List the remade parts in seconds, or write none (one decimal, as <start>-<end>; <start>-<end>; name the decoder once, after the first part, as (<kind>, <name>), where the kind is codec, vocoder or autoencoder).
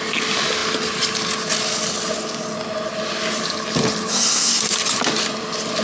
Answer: 4.1-4.6 (codec, SNAC)